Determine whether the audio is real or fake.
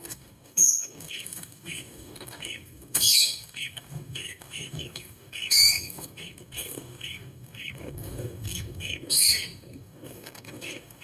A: fake